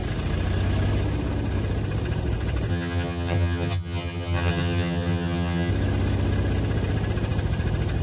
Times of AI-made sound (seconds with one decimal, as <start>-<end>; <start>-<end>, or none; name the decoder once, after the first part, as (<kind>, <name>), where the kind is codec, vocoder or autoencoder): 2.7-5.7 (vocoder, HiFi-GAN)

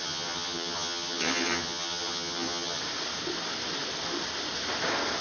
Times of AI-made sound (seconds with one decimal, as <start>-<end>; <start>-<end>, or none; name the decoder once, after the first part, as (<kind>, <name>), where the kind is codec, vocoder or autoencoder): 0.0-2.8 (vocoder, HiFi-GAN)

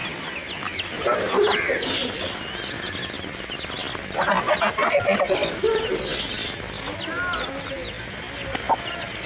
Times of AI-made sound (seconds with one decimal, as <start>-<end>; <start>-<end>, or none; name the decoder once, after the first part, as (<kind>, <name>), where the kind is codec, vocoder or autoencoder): 1.5-2.5 (vocoder, BigVGAN v2)